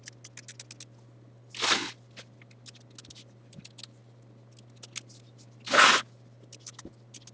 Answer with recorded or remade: recorded